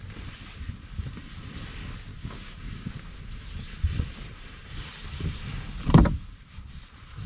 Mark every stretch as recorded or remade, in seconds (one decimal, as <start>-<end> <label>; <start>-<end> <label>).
0.0-2.1 recorded; 2.1-2.9 remade; 2.9-7.3 recorded